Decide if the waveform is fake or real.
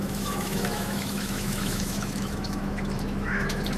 fake